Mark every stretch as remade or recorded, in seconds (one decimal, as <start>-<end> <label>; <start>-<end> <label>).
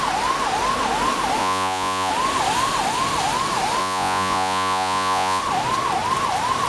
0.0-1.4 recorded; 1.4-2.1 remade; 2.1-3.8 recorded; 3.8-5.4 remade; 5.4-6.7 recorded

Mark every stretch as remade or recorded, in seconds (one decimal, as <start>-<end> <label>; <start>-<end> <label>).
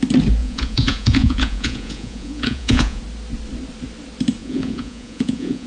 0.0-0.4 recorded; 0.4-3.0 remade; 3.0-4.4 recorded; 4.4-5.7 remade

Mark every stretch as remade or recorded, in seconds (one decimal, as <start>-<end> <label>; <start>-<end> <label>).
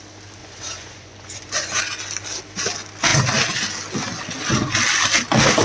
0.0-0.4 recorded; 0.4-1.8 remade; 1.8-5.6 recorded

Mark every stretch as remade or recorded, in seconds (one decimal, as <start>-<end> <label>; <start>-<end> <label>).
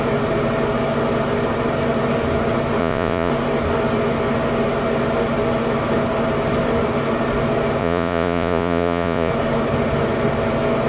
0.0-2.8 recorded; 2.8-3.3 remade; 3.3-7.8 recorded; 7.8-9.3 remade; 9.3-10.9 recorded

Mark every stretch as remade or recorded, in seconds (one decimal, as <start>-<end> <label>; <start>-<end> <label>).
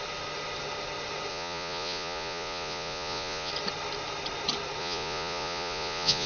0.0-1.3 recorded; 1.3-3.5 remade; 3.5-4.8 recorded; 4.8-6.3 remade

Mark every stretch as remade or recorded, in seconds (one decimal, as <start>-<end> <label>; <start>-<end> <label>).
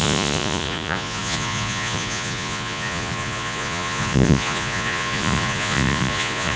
0.0-6.6 remade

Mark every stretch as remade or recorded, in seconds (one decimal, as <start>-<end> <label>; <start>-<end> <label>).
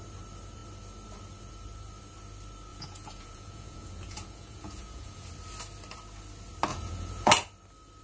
0.0-2.7 recorded; 2.7-5.3 remade; 5.3-6.7 recorded; 6.7-7.3 remade; 7.3-8.0 recorded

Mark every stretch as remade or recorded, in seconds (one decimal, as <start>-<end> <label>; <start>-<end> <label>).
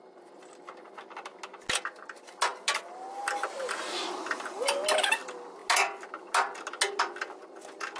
0.0-8.0 recorded